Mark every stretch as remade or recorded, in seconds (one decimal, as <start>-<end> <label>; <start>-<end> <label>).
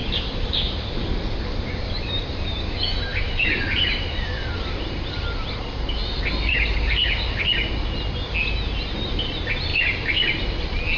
0.0-2.0 remade; 2.0-3.1 recorded; 3.1-5.6 remade; 5.6-6.0 recorded; 6.0-7.4 remade; 7.4-9.7 recorded; 9.7-10.5 remade; 10.5-11.0 recorded